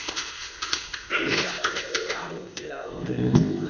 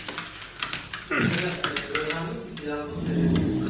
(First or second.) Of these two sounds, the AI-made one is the first